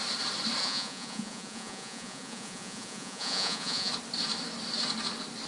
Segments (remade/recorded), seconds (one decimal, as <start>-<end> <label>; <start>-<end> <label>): 0.0-0.6 recorded; 0.6-3.9 remade; 3.9-5.5 recorded